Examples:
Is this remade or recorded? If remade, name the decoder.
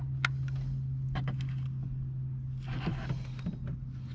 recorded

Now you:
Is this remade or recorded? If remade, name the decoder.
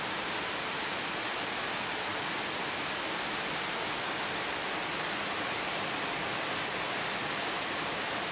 recorded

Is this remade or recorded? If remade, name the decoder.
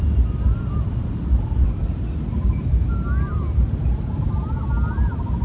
recorded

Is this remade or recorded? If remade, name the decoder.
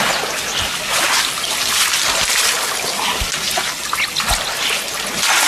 recorded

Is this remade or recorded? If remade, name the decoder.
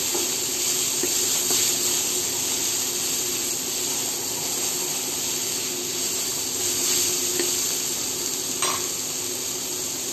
recorded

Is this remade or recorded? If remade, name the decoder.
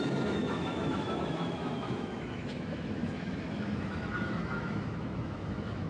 remade, autoencoder, DAC-VAE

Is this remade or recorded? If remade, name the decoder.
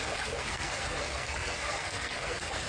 remade, codec, SNAC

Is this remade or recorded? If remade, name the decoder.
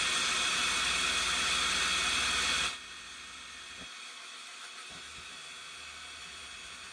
recorded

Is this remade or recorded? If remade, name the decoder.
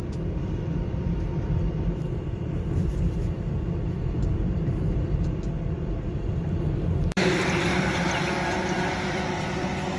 remade, vocoder, BigVGAN v2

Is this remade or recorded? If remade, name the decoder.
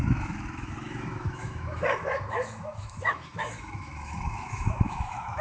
remade, autoencoder, DAC-VAE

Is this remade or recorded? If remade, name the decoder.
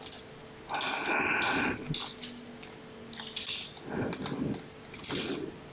recorded